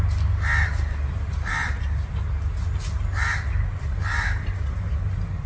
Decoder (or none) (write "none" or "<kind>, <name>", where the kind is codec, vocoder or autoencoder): none